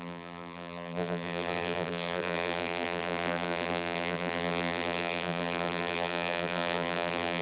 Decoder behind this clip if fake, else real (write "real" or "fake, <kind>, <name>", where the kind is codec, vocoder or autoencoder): fake, vocoder, BigVGAN v2